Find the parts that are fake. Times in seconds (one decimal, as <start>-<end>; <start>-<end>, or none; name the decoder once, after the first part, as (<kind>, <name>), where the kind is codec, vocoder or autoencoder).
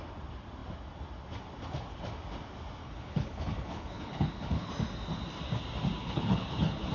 2.8-4.7 (codec, HILCodec); 6.0-6.9